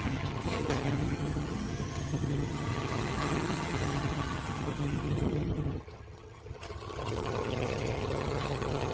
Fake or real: fake